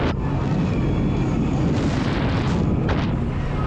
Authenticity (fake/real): real